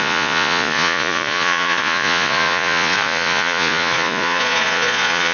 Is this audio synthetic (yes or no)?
yes